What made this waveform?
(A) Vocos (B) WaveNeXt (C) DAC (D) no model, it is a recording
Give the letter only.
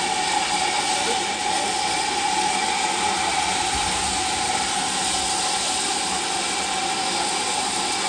D